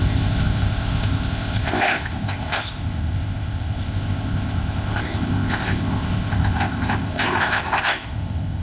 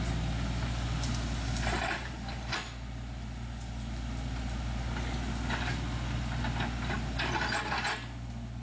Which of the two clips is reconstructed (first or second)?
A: first